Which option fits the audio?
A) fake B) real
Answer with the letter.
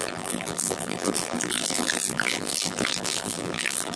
A